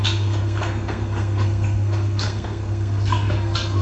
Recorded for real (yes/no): no